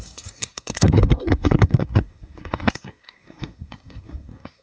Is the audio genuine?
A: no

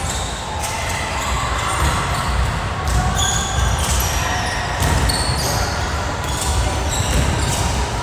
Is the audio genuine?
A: yes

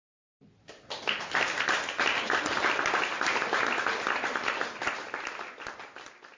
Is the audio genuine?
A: yes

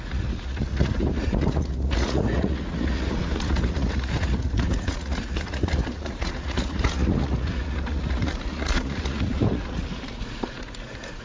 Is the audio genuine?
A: no